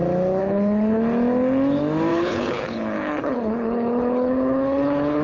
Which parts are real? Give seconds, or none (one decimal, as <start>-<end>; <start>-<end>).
0.0-0.4; 1.0-2.1

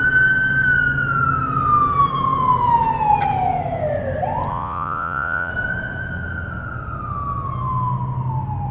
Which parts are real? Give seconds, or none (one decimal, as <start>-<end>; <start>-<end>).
0.0-4.5; 5.5-8.7

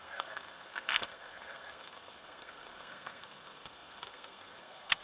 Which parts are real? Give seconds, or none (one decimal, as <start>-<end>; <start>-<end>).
none

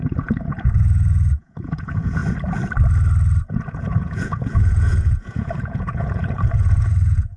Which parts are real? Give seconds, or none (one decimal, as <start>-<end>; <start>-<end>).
2.2-3.5

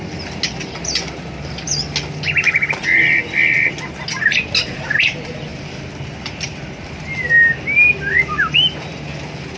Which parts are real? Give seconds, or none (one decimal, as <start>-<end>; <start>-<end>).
0.0-9.6